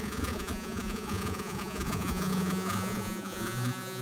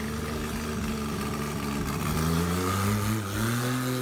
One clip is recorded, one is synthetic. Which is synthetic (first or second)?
first